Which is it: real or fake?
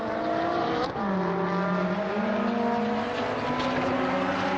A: real